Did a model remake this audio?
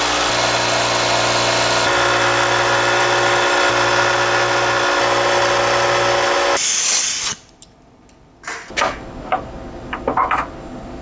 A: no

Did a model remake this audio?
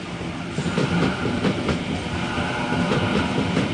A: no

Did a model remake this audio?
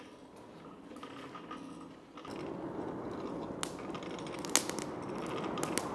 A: no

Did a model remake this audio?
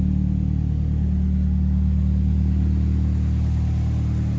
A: no